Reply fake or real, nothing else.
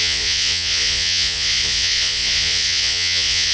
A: fake